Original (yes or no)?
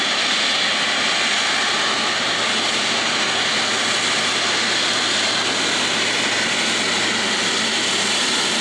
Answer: yes